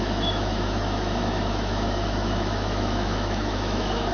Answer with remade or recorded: remade